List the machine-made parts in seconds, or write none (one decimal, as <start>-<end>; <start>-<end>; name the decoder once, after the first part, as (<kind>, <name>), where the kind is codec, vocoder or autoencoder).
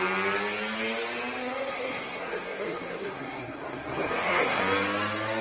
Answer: 1.4-4.6 (codec, SNAC)